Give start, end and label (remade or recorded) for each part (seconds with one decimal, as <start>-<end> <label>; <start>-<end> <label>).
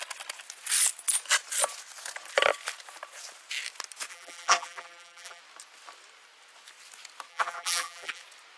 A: 0.0-4.1 recorded; 4.1-5.4 remade; 5.4-7.3 recorded; 7.3-8.2 remade; 8.2-8.6 recorded